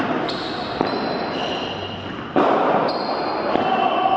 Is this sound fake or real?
real